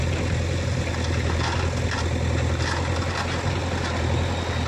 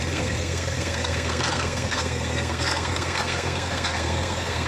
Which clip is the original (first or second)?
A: first